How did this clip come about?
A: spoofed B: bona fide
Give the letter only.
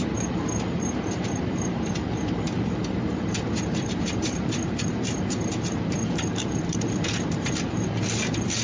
A